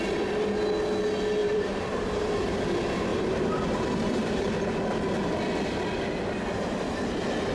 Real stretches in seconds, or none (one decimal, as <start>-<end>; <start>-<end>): 0.0-1.4; 2.4-3.1; 4.5-7.5